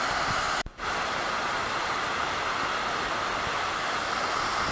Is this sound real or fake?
real